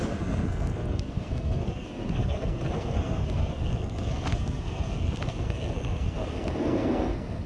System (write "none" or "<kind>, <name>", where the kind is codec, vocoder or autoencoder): codec, SNAC